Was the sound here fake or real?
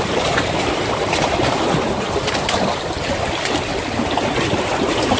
real